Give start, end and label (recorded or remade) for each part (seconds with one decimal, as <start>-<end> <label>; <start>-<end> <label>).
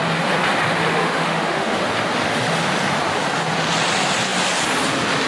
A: 0.0-1.0 recorded; 1.0-1.8 remade; 1.8-5.3 recorded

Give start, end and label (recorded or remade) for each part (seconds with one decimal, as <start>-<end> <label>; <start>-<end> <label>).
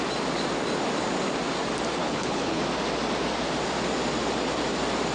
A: 0.0-2.0 recorded; 2.0-2.6 remade; 2.6-5.1 recorded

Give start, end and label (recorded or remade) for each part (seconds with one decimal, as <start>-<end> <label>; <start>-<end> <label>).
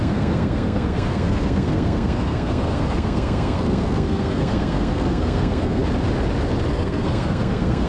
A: 0.0-5.8 remade; 5.8-6.7 recorded; 6.7-7.9 remade